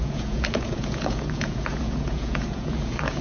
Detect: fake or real fake